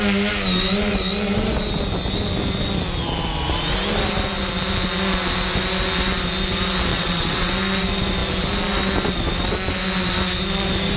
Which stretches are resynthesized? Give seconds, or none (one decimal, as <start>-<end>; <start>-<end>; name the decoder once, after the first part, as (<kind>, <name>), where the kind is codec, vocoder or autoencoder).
6.9-7.5 (vocoder, WaveNeXt)